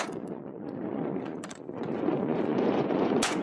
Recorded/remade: remade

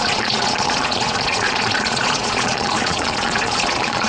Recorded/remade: remade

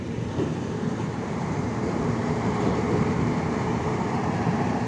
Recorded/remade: remade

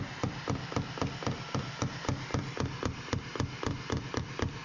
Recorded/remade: remade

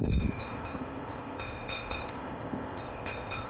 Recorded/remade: remade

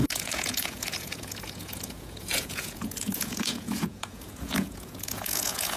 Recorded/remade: remade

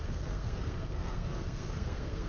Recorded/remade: remade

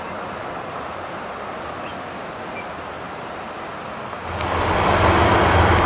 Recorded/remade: recorded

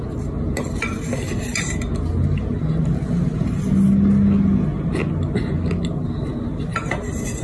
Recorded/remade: recorded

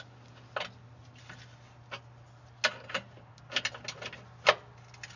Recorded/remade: recorded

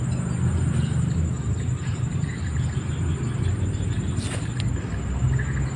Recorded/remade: recorded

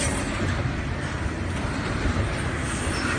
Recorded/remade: remade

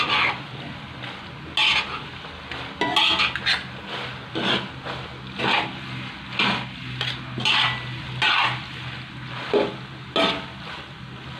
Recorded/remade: recorded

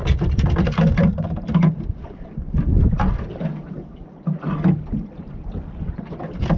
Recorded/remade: recorded